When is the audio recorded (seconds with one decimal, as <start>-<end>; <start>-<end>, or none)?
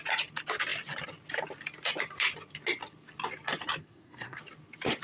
0.0-3.8; 4.4-5.0